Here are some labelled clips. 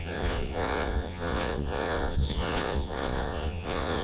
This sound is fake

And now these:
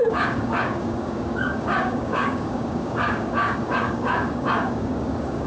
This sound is fake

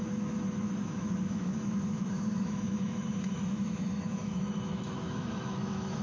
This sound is fake